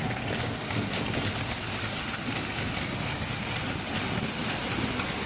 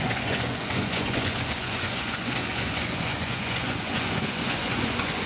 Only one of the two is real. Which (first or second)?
first